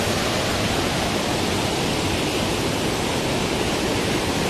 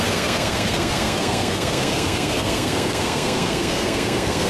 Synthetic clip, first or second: second